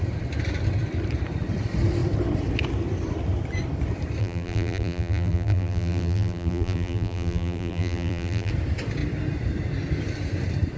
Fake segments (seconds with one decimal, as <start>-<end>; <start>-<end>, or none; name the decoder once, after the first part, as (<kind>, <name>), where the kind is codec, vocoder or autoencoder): 4.2-8.5 (vocoder, BigVGAN v2)